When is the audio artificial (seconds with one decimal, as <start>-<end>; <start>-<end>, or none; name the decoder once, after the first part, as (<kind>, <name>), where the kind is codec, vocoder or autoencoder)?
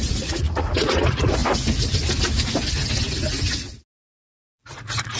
0.0-1.4 (vocoder, Vocos); 4.0-5.2